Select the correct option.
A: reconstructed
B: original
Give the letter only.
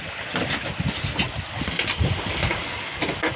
B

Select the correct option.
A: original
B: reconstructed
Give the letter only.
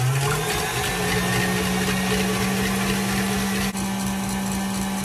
A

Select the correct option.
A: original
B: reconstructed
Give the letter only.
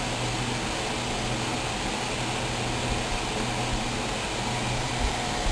A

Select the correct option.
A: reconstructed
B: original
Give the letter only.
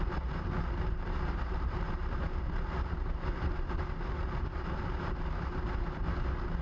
A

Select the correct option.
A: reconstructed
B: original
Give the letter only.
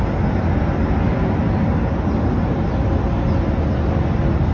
B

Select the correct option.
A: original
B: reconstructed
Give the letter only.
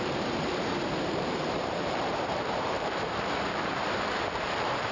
B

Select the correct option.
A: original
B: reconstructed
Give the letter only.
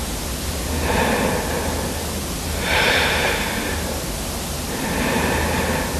A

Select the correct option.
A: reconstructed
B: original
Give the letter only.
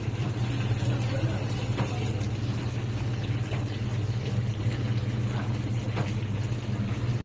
B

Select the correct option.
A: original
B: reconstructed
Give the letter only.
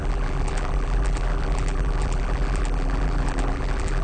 B